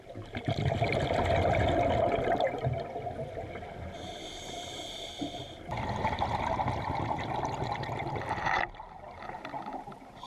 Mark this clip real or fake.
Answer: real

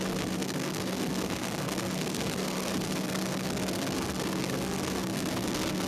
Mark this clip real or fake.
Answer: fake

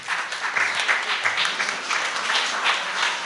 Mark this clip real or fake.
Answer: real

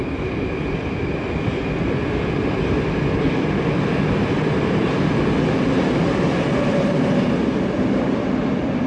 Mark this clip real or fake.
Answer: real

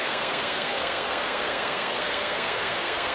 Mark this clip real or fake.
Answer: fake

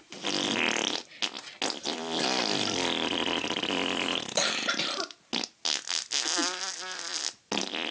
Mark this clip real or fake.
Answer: real